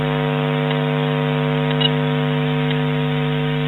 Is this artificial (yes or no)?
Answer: no